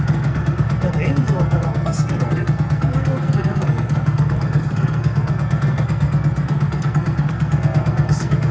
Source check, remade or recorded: remade